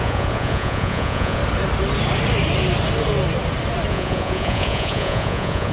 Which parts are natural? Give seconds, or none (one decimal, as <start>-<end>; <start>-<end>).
1.4-3.9